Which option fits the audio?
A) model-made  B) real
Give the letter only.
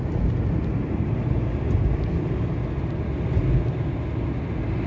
B